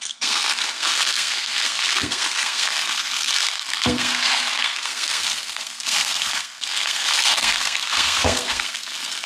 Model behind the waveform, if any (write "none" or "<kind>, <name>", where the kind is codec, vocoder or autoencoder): codec, SNAC